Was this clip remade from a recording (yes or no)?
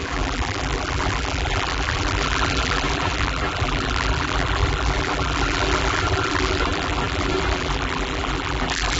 yes